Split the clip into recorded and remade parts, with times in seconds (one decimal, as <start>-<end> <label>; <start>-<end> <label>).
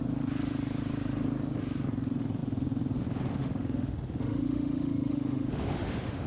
0.0-3.4 recorded; 3.4-6.3 remade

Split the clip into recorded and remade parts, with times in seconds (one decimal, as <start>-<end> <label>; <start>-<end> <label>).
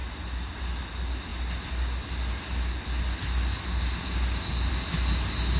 0.0-5.6 recorded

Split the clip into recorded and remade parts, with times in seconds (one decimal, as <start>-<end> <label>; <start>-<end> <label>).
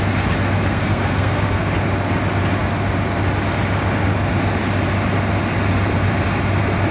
0.0-0.7 recorded; 0.7-1.7 remade; 1.7-6.9 recorded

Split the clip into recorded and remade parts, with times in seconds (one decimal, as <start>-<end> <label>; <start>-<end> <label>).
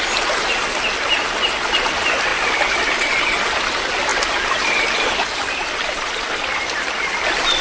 0.0-7.6 recorded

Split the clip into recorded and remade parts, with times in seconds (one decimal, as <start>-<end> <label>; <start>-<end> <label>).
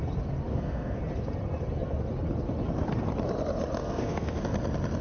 0.0-0.5 recorded; 0.5-1.0 remade; 1.0-3.8 recorded; 3.8-4.4 remade; 4.4-5.0 recorded